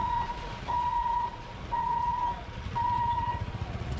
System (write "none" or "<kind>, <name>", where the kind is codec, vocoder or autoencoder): vocoder, Vocos